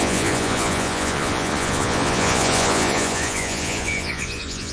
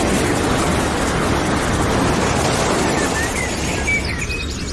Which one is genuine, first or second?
second